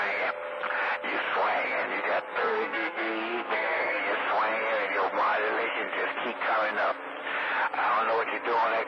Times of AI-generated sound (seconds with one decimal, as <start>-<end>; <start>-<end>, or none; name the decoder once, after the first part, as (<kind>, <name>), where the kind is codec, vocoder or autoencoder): 2.4-4.0 (codec, SNAC)

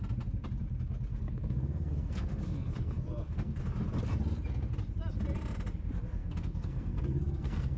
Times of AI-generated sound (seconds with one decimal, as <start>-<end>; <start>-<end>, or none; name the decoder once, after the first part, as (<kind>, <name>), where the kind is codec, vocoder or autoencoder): 1.1-3.6 (codec, SNAC); 6.2-7.8

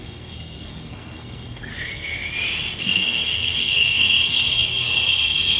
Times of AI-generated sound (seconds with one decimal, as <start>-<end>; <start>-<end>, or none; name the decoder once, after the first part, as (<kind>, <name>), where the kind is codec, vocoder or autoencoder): 0.0-1.7 (codec, SNAC); 2.8-5.6

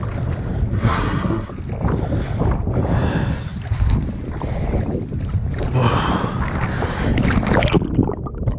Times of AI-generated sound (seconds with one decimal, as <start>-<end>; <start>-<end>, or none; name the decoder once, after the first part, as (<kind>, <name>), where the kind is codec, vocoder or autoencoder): 0.7-1.5 (codec, SNAC)

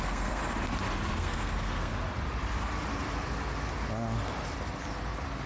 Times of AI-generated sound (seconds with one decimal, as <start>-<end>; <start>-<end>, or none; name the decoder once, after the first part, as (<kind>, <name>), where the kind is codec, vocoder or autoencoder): 0.0-0.4 (codec, SNAC); 1.1-1.9

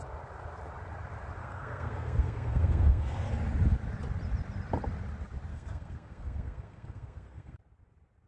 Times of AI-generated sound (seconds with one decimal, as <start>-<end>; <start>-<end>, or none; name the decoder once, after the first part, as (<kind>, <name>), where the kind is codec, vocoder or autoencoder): 1.4-3.2 (codec, SNAC); 5.5-7.6